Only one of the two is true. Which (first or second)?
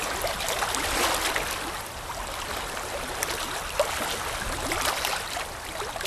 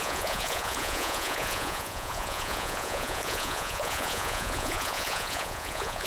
first